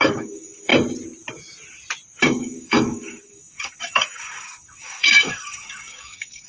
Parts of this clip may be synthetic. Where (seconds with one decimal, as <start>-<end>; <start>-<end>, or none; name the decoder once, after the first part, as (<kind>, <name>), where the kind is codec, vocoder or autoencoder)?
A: 0.0-0.7 (codec, DAC); 2.2-6.5